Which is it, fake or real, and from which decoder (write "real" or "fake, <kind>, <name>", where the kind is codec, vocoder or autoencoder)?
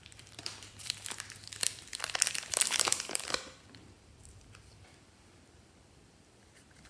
fake, vocoder, BigVGAN v2